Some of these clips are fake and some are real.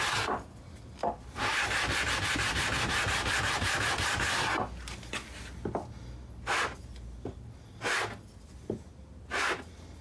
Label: real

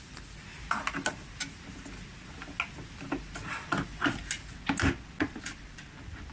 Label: real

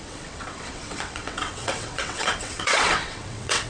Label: fake